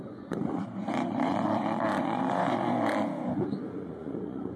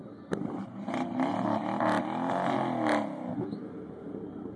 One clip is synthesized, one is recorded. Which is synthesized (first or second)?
first